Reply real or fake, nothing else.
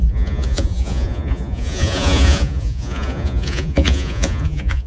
fake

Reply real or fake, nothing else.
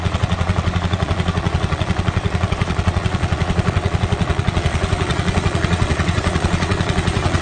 fake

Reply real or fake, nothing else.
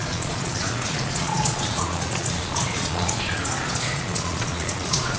fake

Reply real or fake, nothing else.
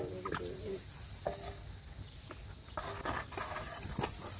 real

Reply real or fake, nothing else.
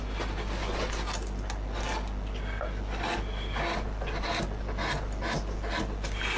real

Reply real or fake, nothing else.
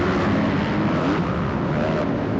real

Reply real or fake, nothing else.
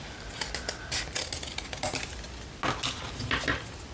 real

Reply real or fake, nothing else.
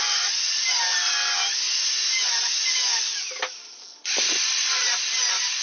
real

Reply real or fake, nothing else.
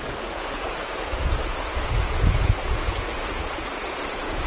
fake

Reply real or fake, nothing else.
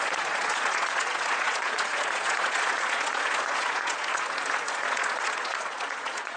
fake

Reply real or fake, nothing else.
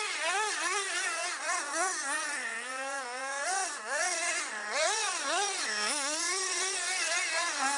fake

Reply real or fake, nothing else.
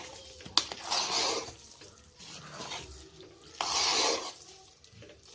real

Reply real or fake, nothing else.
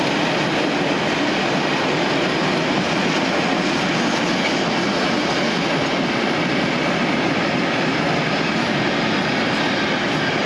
real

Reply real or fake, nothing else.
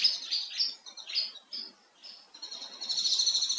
real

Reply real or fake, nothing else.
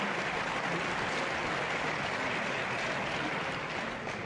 real